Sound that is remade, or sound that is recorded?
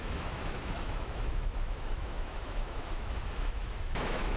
remade